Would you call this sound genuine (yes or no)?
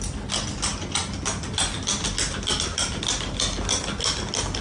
yes